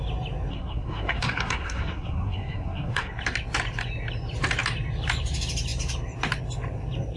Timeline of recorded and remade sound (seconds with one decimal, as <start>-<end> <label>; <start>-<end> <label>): 0.0-0.5 recorded; 0.5-3.1 remade; 3.1-7.2 recorded

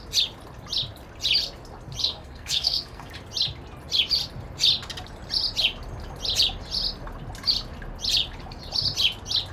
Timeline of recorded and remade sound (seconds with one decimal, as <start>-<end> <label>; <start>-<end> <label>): 0.0-2.0 recorded; 2.0-3.1 remade; 3.1-9.5 recorded

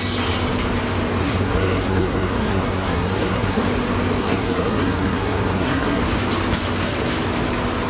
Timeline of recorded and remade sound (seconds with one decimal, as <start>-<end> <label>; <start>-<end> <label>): 0.0-1.2 recorded; 1.2-3.6 remade; 3.6-4.2 recorded; 4.2-6.0 remade; 6.0-7.9 recorded

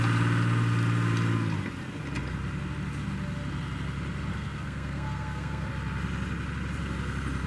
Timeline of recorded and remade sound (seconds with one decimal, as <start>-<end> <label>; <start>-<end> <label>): 0.0-4.3 recorded; 4.3-5.7 remade; 5.7-7.5 recorded

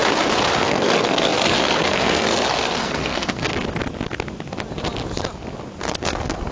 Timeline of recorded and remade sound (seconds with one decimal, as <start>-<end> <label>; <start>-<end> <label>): 0.0-0.6 recorded; 0.6-3.5 remade; 3.5-6.0 recorded; 6.0-6.5 remade

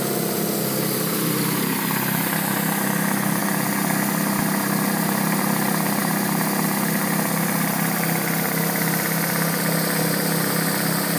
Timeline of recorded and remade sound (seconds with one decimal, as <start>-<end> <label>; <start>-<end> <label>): 0.0-11.2 recorded

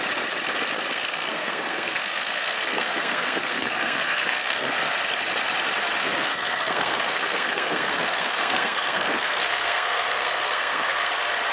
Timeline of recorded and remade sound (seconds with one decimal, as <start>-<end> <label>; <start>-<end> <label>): 0.0-0.9 recorded; 0.9-4.7 remade; 4.7-6.0 recorded; 6.0-11.1 remade; 11.1-11.5 recorded

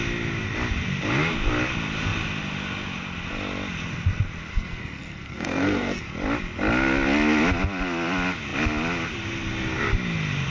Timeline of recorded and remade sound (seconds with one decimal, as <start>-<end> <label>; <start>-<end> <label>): 0.0-4.5 recorded; 4.5-6.0 remade; 6.0-10.5 recorded